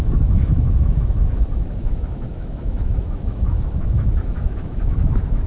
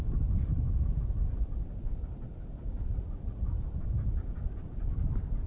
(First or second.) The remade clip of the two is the first